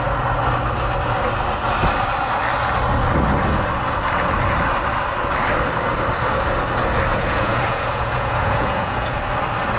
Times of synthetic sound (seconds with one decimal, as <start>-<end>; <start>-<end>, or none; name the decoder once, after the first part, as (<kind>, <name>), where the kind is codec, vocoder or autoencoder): 7.1-9.2 (vocoder, Vocos)